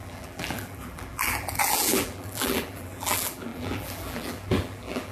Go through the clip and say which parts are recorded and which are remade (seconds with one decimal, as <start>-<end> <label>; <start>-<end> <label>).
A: 0.0-5.1 remade